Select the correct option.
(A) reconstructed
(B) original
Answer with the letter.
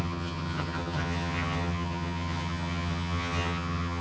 A